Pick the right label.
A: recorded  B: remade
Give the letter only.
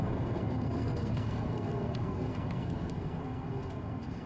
B